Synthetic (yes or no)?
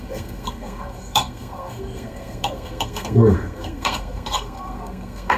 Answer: yes